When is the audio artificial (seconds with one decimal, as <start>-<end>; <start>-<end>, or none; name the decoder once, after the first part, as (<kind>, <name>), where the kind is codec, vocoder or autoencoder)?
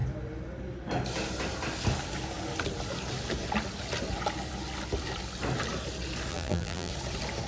6.3-6.9 (vocoder, BigVGAN v2)